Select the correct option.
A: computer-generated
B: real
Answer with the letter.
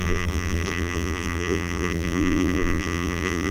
A